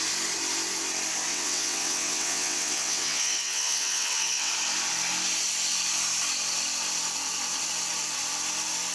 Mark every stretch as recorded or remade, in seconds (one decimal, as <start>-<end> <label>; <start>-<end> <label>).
0.0-1.3 recorded; 1.3-4.5 remade; 4.5-8.9 recorded